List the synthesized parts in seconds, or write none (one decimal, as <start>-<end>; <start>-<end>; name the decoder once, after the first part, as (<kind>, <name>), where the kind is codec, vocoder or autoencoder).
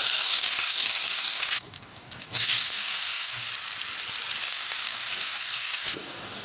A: 0.0-3.5 (codec, DAC); 4.4-6.4